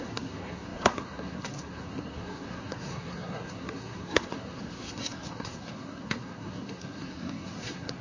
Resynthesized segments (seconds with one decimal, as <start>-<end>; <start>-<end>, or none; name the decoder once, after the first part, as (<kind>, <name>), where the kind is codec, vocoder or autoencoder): 0.0-8.0 (codec, SNAC)

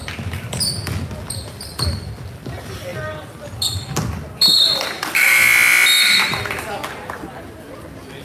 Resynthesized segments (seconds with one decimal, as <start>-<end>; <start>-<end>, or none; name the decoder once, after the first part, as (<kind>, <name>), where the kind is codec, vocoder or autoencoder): none

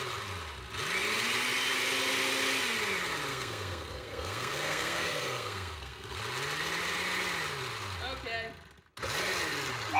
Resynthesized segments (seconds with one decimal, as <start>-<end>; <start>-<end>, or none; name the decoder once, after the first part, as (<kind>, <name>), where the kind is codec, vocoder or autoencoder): 3.3-6.2 (codec, SNAC)

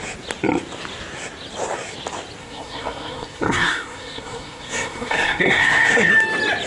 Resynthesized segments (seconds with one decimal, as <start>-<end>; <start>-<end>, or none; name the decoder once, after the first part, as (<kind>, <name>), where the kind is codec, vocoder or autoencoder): 2.4-6.1 (codec, SNAC)

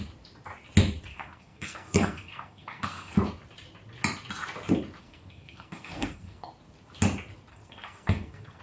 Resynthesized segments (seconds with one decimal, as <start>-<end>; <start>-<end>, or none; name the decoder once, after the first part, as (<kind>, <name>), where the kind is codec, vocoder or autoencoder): 1.1-3.3 (codec, SNAC); 5.0-6.5; 7.5-8.6